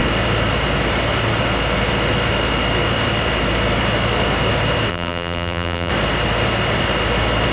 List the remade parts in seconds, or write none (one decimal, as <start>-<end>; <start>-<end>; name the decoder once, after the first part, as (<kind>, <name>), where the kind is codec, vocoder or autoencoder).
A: 4.9-5.9 (vocoder, BigVGAN v2)